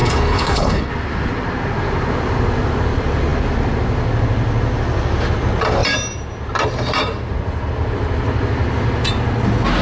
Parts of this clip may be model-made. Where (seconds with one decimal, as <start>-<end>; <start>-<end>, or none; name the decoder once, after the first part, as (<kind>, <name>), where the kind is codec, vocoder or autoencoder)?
0.0-0.9 (codec, HILCodec)